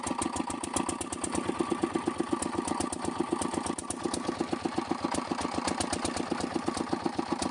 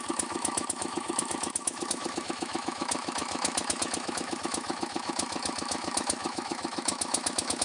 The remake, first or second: second